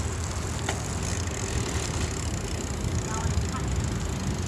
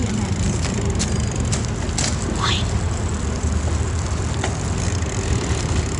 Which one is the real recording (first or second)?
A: first